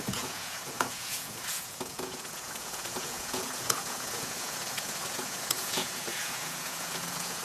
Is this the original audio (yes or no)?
no